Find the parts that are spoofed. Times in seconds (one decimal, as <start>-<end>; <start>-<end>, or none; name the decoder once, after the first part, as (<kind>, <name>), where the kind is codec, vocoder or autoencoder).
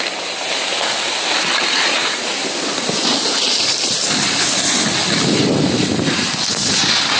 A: 2.0-2.5 (vocoder, BigVGAN v2)